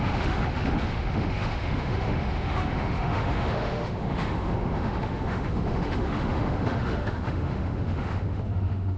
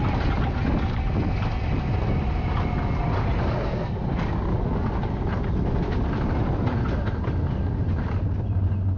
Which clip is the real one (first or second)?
second